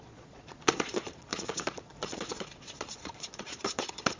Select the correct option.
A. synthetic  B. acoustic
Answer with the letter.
A